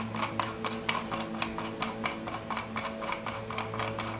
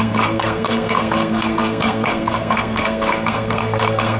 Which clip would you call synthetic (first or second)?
second